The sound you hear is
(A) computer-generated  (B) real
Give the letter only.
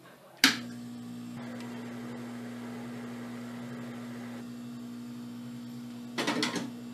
B